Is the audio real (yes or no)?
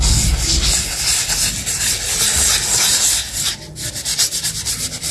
yes